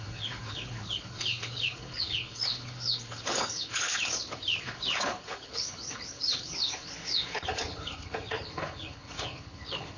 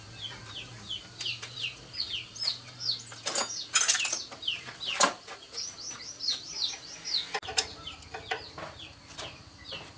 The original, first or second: second